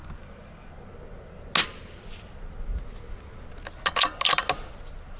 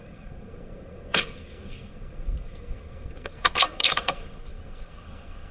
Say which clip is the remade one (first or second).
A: second